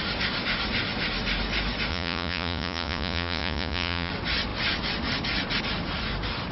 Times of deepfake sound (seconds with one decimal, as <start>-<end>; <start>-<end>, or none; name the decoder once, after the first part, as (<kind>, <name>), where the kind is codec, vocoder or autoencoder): 1.9-4.1 (vocoder, Vocos)